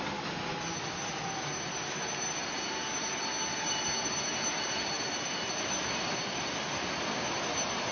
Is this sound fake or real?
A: real